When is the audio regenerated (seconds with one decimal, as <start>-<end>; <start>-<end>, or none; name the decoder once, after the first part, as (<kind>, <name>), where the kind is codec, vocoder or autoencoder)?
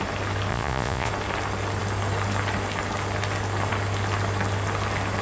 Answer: 0.5-1.1 (vocoder, Vocos)